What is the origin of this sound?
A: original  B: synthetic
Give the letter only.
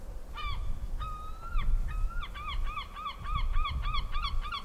A